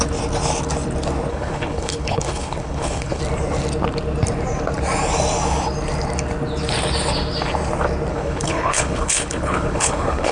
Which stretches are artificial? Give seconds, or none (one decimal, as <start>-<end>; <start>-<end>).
1.3-3.2; 8.1-10.3